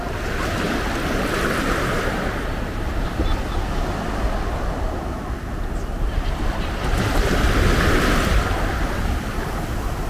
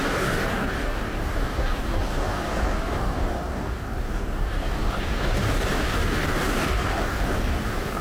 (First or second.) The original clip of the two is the first